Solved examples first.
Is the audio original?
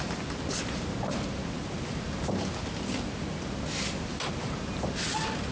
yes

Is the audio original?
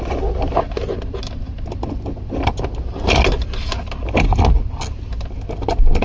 yes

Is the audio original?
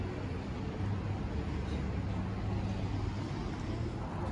yes